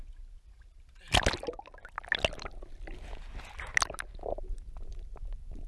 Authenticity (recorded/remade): recorded